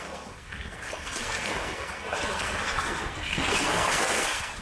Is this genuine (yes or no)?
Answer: no